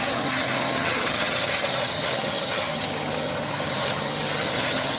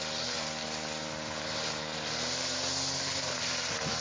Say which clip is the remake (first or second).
first